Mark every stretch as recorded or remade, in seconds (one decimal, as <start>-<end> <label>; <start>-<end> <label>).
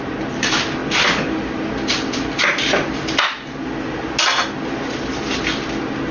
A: 0.0-6.1 recorded